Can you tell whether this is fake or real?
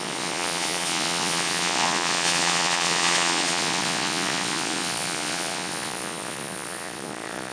fake